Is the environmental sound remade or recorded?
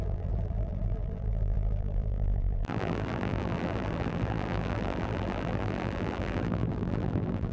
remade